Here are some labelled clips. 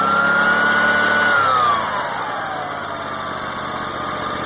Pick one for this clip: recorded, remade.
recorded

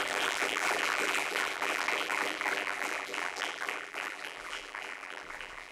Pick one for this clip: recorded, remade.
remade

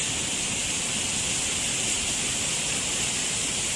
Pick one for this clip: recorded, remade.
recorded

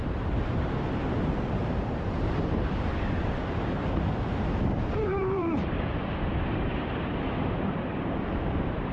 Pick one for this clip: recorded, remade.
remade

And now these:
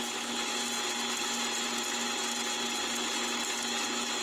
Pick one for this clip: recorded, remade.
recorded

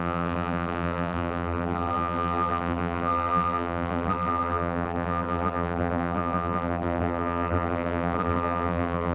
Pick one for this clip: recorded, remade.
remade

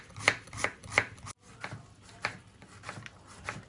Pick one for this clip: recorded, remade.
recorded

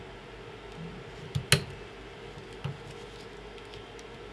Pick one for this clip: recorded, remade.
recorded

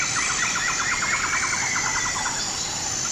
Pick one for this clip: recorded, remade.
recorded